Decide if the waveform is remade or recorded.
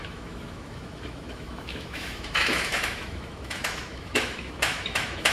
remade